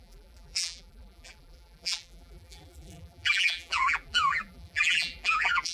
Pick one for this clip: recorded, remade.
remade